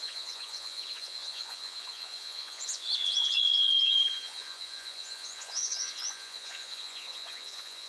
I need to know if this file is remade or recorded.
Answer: remade